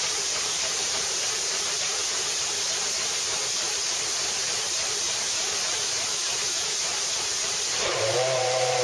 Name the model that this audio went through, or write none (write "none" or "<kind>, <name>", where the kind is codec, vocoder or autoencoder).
vocoder, BigVGAN v2